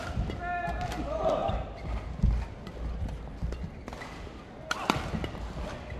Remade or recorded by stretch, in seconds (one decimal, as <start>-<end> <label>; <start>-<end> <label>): 0.0-6.0 recorded